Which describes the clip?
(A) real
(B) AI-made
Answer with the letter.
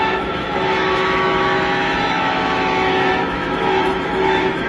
B